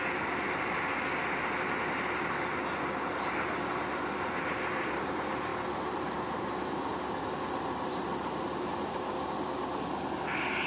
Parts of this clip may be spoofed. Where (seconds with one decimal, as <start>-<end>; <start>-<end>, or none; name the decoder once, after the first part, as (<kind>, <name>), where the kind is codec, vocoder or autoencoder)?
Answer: 7.9-9.1 (vocoder, BigVGAN v2)